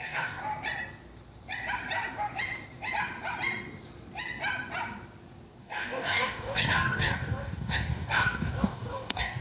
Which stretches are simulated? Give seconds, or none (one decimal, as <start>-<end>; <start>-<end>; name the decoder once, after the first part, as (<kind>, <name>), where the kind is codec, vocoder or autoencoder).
0.0-0.4 (codec, DAC); 5.6-9.4